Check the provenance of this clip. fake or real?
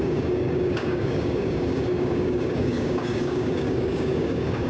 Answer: fake